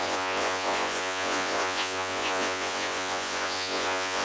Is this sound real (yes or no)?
no